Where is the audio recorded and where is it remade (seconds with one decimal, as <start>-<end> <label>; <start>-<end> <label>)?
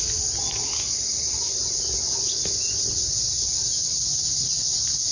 0.0-5.1 recorded